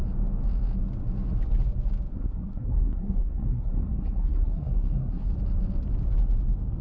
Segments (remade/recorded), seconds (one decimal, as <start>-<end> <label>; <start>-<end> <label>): 0.0-2.1 recorded; 2.1-5.3 remade; 5.3-6.8 recorded